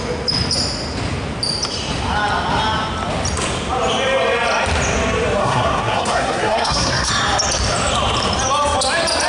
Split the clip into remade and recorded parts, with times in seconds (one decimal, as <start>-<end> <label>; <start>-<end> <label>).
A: 0.0-5.4 recorded; 5.4-7.1 remade; 7.1-9.3 recorded